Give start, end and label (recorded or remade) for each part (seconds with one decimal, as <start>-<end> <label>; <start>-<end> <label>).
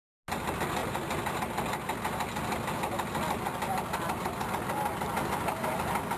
0.0-6.2 recorded